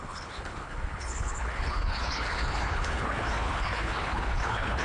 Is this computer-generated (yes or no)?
yes